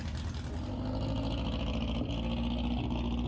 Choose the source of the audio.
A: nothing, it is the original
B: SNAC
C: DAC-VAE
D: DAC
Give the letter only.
A